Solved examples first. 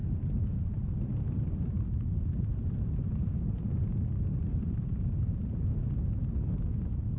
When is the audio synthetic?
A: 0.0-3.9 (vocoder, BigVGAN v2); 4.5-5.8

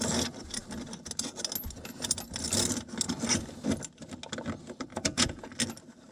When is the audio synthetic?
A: 4.9-5.5 (vocoder, Vocos)

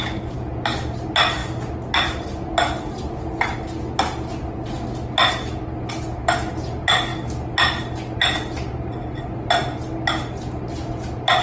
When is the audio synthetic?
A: none